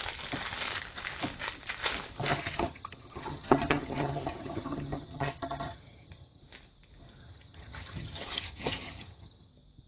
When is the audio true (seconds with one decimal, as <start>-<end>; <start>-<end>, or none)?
0.0-2.3; 6.4-7.2; 9.5-9.9